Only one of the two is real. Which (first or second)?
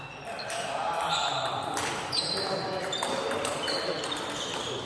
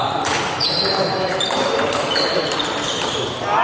first